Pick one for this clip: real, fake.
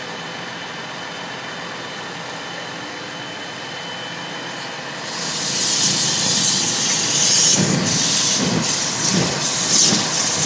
real